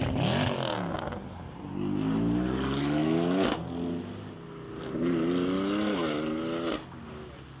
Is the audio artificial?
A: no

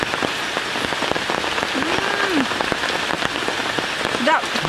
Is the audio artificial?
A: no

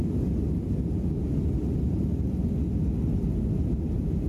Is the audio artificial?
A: no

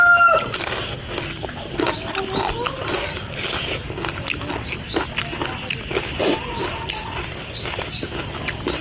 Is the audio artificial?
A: no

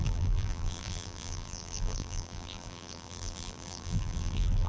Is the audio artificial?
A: yes